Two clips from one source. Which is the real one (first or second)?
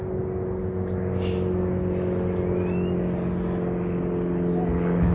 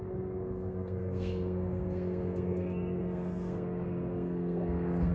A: first